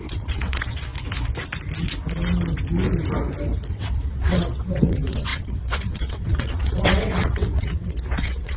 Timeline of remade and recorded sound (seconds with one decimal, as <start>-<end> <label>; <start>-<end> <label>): 0.0-0.9 remade; 0.9-3.7 recorded; 3.7-8.6 remade